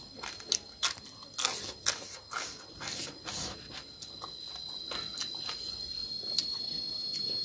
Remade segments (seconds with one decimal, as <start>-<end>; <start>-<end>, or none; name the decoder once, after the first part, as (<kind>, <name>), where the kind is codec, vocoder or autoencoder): none